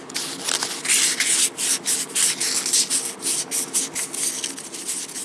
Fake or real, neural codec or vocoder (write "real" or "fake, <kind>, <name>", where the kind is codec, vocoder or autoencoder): real